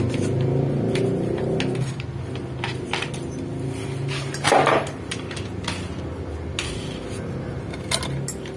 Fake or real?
real